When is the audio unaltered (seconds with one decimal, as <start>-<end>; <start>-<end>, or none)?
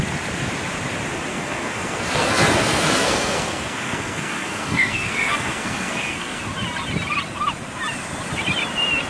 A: 0.0-1.3; 6.4-9.1